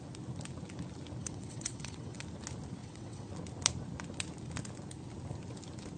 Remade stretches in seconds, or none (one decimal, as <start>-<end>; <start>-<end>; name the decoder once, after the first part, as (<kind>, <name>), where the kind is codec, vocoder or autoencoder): 1.2-2.2 (vocoder, WaveNeXt); 2.8-3.3